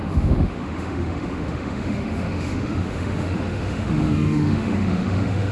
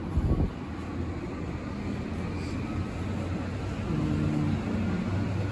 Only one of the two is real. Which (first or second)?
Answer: second